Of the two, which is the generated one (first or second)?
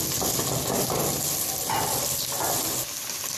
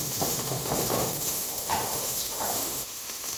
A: second